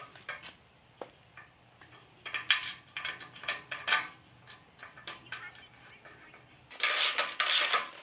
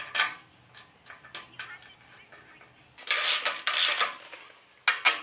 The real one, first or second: second